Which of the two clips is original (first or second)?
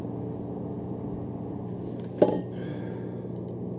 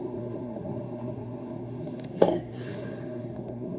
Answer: first